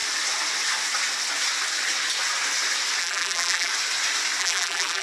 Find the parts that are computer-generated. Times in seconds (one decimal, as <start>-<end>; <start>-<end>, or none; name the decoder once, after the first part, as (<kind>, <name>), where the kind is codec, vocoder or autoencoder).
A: 3.0-3.7 (vocoder, BigVGAN v2); 4.4-5.0